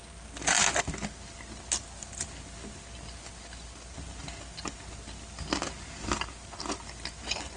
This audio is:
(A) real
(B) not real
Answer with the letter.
A